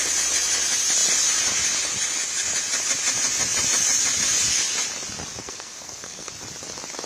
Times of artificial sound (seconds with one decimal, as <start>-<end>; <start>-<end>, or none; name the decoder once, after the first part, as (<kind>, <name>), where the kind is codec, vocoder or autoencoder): 5.4-6.3 (codec, SNAC)